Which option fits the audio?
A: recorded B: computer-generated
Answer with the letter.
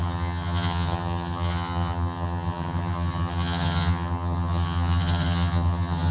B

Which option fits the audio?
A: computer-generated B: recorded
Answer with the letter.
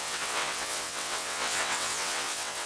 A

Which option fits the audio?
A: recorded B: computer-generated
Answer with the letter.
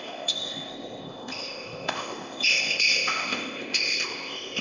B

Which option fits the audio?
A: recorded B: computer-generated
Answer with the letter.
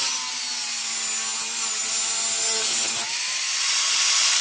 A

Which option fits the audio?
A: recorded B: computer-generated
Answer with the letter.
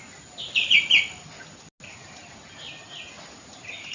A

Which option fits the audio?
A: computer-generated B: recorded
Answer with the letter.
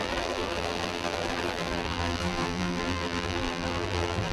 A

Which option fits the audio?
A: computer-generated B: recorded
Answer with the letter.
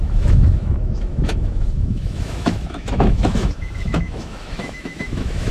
A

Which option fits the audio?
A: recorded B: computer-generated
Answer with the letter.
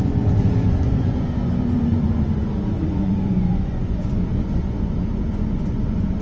B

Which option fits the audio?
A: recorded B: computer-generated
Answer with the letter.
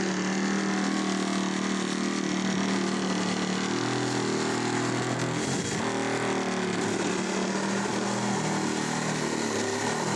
A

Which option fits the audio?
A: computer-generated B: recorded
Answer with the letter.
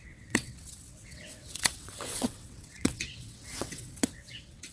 A